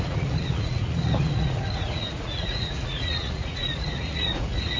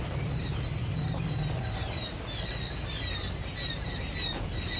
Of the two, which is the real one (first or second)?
second